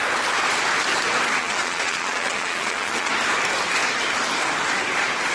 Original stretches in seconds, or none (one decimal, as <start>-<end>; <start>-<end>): 0.0-1.4; 3.1-5.3